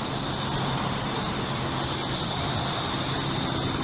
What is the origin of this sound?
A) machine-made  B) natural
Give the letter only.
B